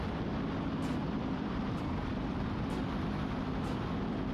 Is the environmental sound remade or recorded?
remade